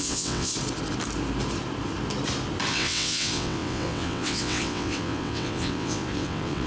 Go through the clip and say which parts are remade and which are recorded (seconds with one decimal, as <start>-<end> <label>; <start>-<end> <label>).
0.0-0.5 remade; 0.5-2.7 recorded; 2.7-6.7 remade